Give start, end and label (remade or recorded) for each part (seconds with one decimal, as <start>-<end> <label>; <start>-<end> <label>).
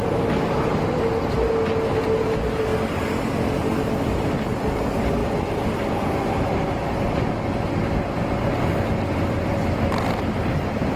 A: 0.0-11.0 recorded